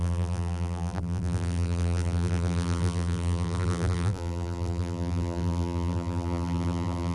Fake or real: fake